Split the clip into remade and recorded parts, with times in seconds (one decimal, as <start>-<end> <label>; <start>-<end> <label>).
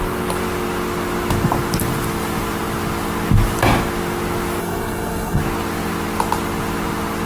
0.0-4.6 recorded; 4.6-5.4 remade; 5.4-7.3 recorded